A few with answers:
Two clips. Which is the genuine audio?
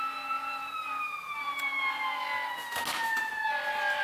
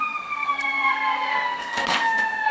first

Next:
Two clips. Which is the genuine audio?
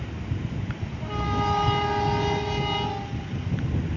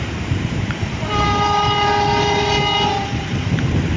first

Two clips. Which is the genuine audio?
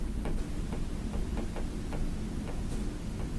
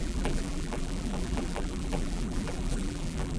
first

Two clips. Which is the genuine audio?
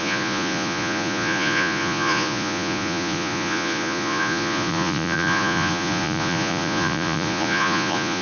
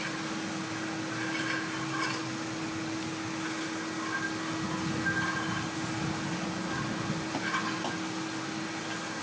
second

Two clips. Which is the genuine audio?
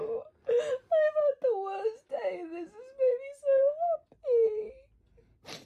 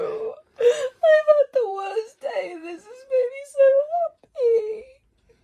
first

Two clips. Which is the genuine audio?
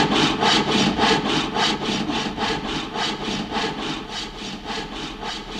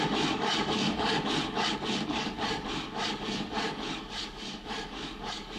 first